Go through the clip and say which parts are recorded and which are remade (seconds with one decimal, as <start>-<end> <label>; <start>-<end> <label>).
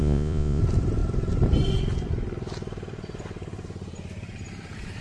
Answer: 0.0-0.6 remade; 0.6-5.0 recorded